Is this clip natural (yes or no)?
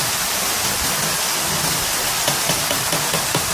yes